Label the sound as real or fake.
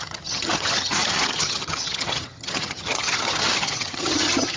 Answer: fake